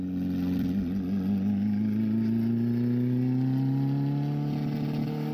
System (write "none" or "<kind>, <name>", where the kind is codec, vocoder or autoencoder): none